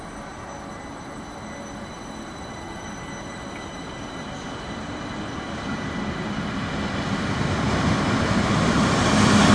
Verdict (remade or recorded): recorded